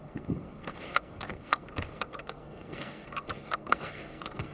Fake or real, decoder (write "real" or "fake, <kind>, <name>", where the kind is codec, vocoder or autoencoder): fake, codec, SNAC